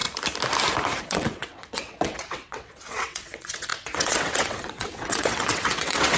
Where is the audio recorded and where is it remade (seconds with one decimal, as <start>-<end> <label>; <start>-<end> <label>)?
0.0-1.0 recorded; 1.0-6.2 remade